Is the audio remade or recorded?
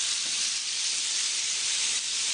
remade